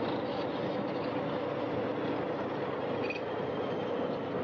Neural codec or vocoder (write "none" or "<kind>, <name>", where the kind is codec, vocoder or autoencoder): none